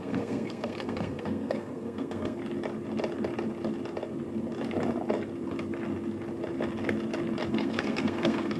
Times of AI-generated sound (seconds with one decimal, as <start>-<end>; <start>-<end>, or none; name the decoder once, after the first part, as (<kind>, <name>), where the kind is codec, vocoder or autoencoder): 0.0-2.4 (codec, SNAC); 7.5-8.6